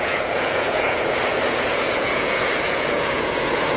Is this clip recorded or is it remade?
remade